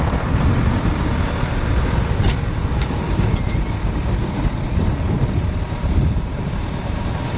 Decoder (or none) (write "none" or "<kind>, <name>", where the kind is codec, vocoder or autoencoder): vocoder, BigVGAN v2